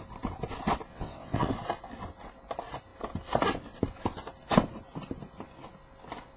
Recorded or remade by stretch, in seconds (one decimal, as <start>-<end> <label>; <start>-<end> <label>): 0.0-0.9 recorded; 0.9-1.5 remade; 1.5-6.4 recorded